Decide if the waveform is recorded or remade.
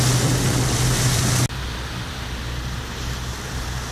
recorded